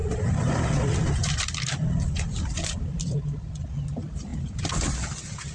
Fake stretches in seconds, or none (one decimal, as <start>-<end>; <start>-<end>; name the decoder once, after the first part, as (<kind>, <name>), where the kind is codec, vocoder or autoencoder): 0.0-3.2 (vocoder, BigVGAN v2)